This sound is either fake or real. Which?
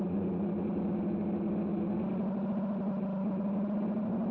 real